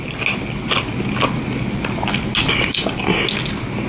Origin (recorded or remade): recorded